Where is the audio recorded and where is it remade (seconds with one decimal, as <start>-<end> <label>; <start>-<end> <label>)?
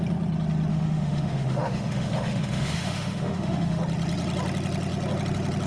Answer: 0.0-0.7 recorded; 0.7-3.8 remade; 3.8-5.7 recorded